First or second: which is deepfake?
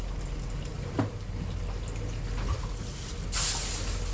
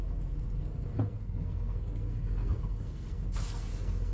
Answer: second